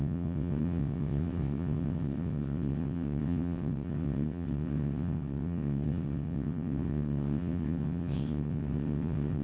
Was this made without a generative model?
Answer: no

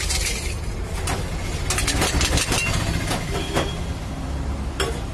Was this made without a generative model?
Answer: yes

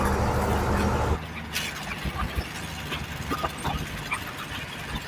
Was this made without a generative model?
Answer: yes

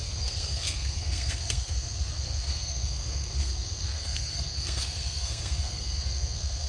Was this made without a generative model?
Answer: no